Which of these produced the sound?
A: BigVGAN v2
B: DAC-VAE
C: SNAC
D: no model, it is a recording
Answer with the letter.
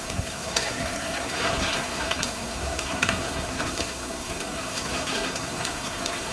C